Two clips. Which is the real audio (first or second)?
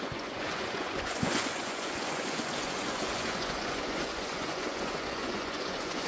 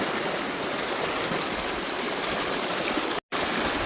second